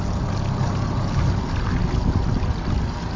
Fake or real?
real